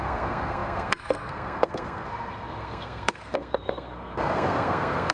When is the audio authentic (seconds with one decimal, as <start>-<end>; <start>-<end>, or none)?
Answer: none

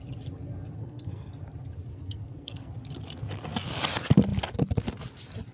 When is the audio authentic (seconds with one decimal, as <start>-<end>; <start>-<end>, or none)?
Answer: 0.0-0.8; 1.3-1.9; 2.7-5.5

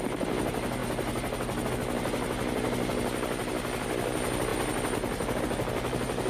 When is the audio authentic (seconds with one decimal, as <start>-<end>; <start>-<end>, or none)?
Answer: 0.0-6.3

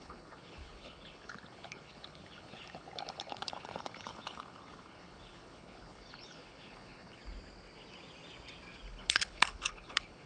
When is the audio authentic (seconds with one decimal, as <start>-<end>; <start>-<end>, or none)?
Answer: 7.2-8.9